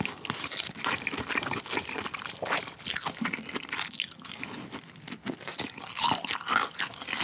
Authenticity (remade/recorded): recorded